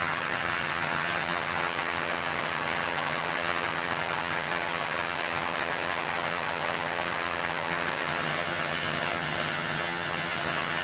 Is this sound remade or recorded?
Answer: remade